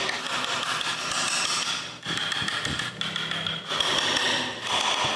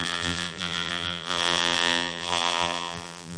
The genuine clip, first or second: first